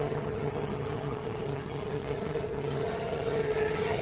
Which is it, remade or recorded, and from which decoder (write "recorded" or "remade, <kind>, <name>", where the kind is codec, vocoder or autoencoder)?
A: remade, vocoder, HiFi-GAN